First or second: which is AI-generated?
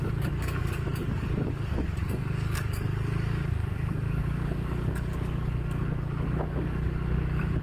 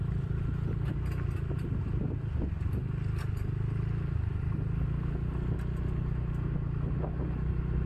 first